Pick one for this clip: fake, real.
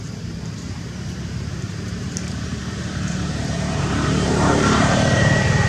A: fake